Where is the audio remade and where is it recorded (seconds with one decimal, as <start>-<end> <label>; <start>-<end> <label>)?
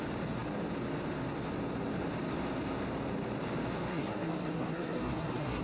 0.0-3.9 recorded; 3.9-5.6 remade